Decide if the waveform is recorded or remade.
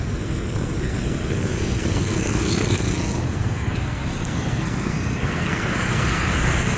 remade